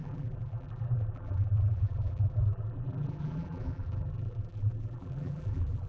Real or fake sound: fake